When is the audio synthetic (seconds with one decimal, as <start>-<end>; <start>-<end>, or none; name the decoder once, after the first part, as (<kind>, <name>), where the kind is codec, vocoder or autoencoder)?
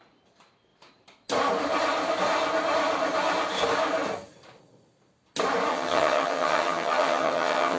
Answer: 5.7-7.8 (vocoder, HiFi-GAN)